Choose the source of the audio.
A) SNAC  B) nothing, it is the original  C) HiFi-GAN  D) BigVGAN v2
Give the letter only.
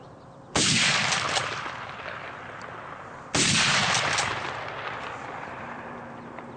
D